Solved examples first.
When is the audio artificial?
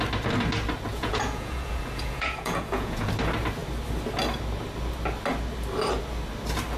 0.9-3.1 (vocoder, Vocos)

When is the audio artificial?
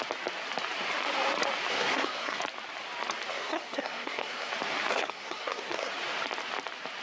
1.7-2.4 (codec, SNAC); 3.3-4.5; 4.9-5.9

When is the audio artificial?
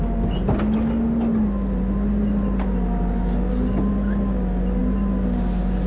none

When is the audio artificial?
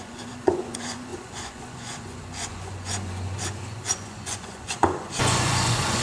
0.0-6.0 (vocoder, Vocos)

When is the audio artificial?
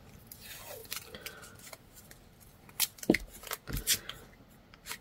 none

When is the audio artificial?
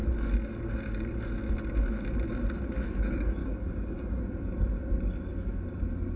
3.4-4.2 (codec, DAC)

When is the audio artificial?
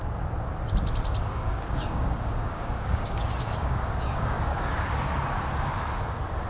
1.3-4.7 (codec, DAC)